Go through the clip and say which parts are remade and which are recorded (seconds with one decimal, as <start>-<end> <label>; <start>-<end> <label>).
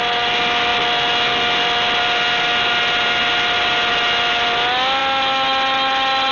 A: 0.0-6.3 recorded